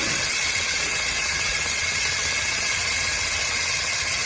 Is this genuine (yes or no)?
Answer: no